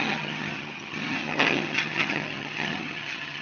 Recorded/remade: remade